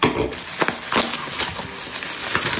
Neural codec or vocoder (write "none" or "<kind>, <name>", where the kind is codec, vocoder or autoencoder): none